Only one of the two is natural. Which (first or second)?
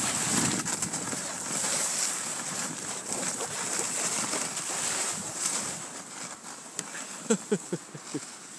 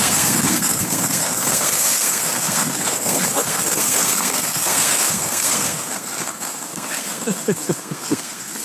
first